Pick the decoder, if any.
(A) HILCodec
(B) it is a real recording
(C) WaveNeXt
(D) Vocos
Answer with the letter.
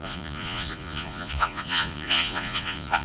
D